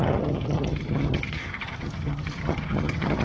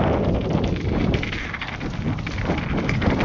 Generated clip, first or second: first